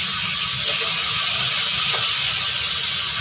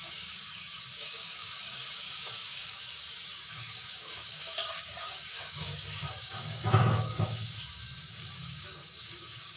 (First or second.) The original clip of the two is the first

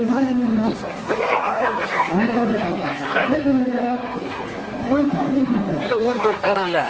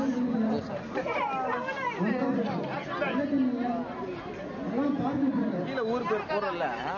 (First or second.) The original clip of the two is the second